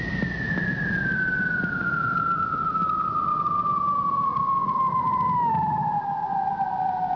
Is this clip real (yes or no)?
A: yes